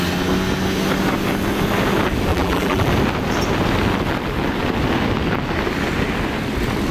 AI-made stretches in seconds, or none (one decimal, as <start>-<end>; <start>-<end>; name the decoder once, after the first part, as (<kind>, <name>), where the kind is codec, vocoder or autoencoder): 2.3-2.9 (vocoder, BigVGAN v2)